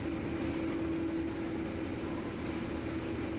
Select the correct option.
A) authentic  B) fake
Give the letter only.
A